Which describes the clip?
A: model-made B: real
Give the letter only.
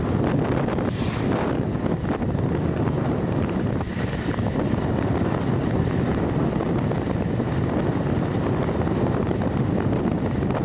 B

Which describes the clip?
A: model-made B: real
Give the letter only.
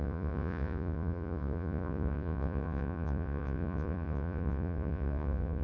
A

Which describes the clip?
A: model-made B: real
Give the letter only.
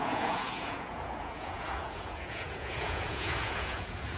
A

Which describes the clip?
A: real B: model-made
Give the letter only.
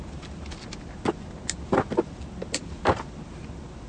A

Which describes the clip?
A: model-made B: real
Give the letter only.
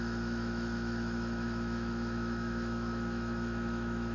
A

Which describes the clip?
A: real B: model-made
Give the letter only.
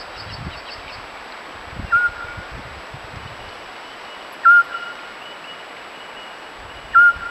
A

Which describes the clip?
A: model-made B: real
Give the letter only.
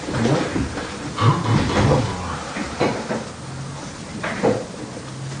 B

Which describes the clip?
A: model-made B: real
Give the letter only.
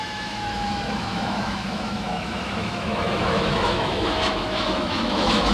A